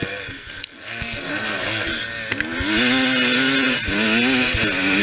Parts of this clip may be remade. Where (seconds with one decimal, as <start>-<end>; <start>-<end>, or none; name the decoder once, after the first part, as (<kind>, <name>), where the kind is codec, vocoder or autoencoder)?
0.0-1.9 (codec, SNAC)